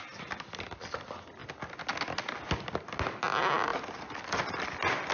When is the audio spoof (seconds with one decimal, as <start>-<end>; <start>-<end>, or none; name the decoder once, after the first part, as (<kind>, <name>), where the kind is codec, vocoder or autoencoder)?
none